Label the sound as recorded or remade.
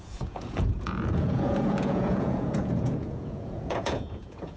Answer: remade